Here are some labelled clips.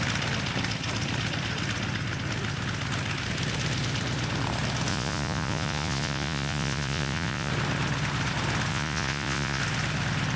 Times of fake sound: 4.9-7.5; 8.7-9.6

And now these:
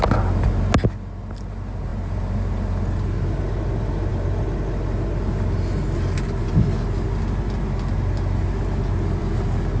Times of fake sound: none

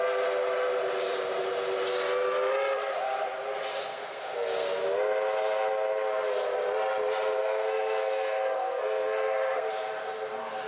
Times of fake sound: 3.9-4.8; 7.4-9.7